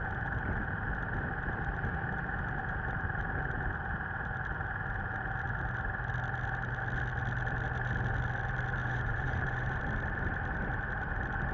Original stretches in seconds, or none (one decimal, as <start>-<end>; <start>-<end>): 0.0-8.8; 9.8-11.5